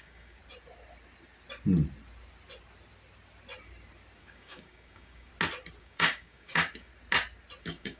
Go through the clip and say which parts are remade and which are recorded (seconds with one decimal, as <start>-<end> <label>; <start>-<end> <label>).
0.0-0.4 remade; 0.4-4.2 recorded; 4.2-5.3 remade; 5.3-5.8 recorded; 5.8-6.9 remade; 6.9-7.6 recorded; 7.6-8.0 remade